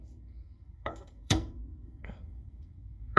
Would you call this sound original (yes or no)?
no